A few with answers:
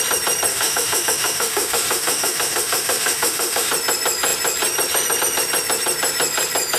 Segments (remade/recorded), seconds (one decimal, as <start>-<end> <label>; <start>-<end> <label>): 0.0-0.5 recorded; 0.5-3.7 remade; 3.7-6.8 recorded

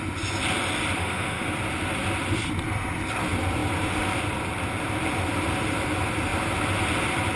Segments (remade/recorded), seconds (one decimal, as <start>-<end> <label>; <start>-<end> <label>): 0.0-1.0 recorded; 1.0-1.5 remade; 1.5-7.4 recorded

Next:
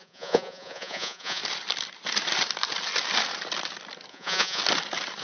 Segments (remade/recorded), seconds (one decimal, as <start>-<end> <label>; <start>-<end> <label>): 0.0-1.4 remade; 1.4-4.1 recorded; 4.1-4.6 remade; 4.6-5.2 recorded

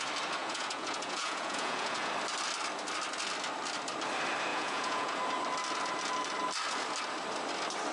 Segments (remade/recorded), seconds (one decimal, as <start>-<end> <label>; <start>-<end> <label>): 0.0-0.4 recorded; 0.4-2.1 remade; 2.1-4.5 recorded; 4.5-5.2 remade; 5.2-7.9 recorded